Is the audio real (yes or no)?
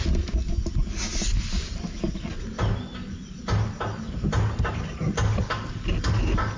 yes